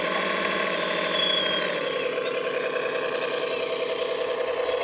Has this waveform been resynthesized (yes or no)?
no